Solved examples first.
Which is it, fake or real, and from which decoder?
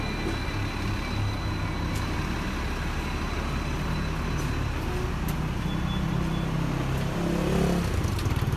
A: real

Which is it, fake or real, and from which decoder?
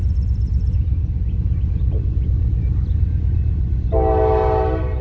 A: real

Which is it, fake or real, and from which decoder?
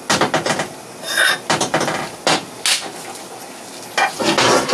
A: real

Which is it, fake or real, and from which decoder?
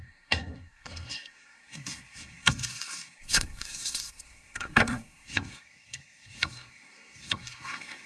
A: fake, codec, SNAC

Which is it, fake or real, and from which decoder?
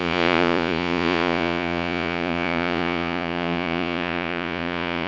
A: fake, vocoder, Vocos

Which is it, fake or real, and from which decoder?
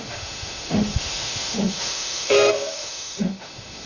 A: fake, autoencoder, DAC-VAE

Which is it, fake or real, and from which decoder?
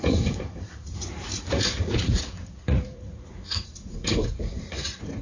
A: fake, vocoder, Vocos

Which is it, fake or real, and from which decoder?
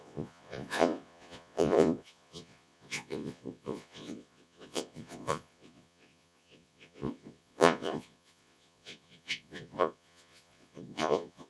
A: fake, vocoder, Vocos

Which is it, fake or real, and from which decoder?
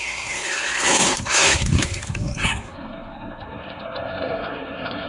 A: fake, codec, SNAC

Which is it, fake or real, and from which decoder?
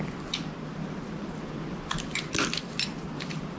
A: real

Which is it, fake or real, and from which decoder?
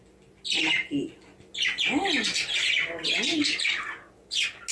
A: real